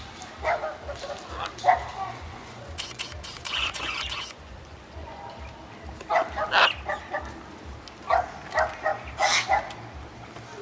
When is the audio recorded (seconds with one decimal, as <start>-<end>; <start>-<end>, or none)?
0.0-1.9; 5.2-10.6